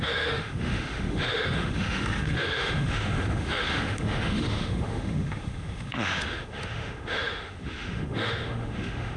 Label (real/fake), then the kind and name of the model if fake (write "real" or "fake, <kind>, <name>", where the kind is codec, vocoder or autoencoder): fake, autoencoder, DAC-VAE